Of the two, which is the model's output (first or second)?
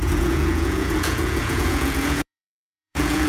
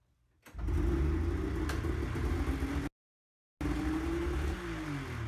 first